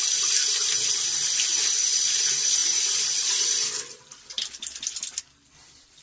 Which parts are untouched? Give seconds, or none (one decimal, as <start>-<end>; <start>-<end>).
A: 0.0-2.6; 5.2-6.0